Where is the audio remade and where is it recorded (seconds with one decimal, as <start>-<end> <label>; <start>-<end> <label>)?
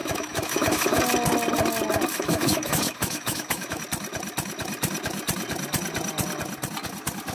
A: 0.0-1.0 remade; 1.0-2.1 recorded; 2.1-3.8 remade; 3.8-7.3 recorded